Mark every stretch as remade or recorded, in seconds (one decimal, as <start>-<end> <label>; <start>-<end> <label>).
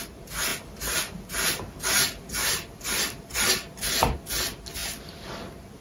0.0-0.5 recorded; 0.5-3.5 remade; 3.5-4.8 recorded; 4.8-5.8 remade